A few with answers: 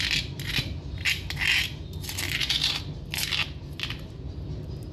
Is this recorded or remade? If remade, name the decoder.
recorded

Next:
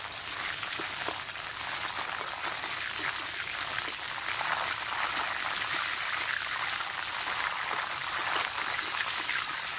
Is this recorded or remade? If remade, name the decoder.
recorded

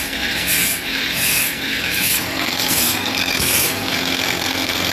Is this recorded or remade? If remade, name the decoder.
remade, codec, SNAC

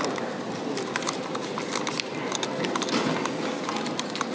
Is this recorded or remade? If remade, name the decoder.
recorded